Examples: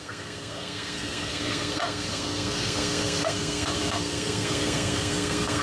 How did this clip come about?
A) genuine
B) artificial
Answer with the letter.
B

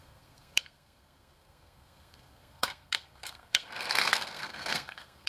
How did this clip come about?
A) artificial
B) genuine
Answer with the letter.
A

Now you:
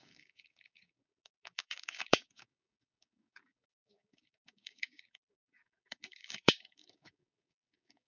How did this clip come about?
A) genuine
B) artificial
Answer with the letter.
B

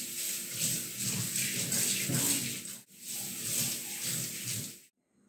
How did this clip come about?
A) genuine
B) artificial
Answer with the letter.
A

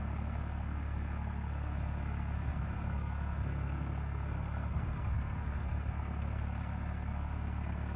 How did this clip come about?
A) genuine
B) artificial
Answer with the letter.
B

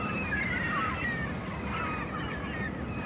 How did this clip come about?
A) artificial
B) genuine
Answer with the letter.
B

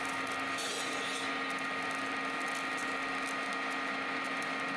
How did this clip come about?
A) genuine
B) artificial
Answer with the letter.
A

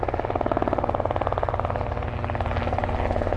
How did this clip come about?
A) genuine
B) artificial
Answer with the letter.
A